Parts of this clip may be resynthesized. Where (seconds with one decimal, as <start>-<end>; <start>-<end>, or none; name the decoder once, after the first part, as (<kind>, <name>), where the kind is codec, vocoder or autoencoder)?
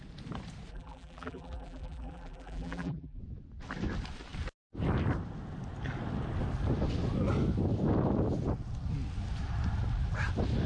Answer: 0.7-3.2 (vocoder, BigVGAN v2)